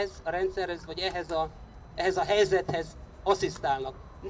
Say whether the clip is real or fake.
real